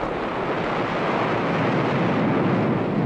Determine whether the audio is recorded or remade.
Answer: recorded